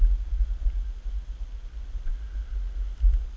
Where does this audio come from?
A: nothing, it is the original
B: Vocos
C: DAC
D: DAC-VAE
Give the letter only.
A